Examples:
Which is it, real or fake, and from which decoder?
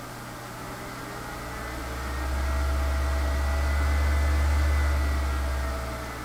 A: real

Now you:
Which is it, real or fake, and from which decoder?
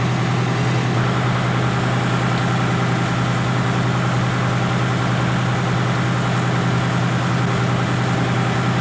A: real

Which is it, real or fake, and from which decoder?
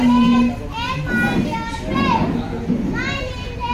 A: real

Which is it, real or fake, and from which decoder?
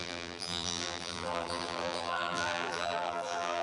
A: fake, vocoder, BigVGAN v2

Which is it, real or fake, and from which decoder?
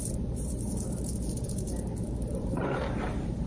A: fake, vocoder, BigVGAN v2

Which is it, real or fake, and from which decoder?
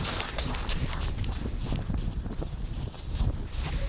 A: fake, vocoder, BigVGAN v2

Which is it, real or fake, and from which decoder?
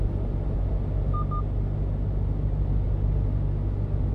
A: real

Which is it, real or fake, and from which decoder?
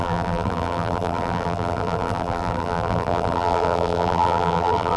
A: fake, vocoder, BigVGAN v2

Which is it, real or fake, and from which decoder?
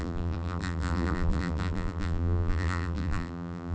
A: fake, vocoder, BigVGAN v2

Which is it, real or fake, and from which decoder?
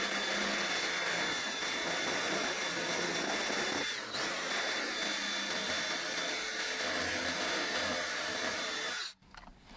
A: real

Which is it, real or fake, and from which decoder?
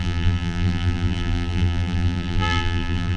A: fake, vocoder, BigVGAN v2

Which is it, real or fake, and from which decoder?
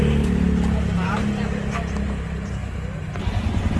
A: real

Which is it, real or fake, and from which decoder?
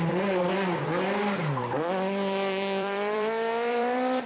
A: fake, vocoder, BigVGAN v2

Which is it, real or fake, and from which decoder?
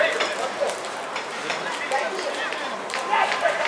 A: fake, vocoder, BigVGAN v2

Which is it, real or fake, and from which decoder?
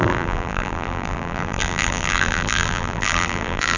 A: fake, vocoder, BigVGAN v2